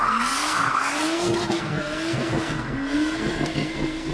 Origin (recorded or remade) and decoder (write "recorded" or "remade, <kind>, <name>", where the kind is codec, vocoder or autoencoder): remade, codec, SNAC